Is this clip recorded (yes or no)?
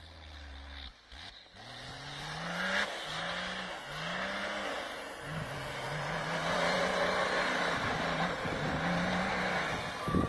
yes